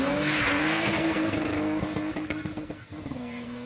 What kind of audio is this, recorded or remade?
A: remade